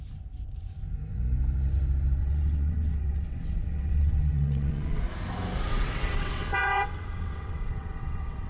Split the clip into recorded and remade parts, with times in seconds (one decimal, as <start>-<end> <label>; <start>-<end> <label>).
0.0-2.2 recorded; 2.2-5.0 remade; 5.0-5.7 recorded; 5.7-8.5 remade